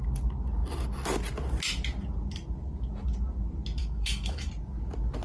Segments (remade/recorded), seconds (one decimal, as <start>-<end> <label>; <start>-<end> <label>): 0.0-3.8 recorded; 3.8-4.5 remade; 4.5-5.2 recorded